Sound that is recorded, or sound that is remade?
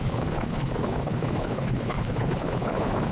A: remade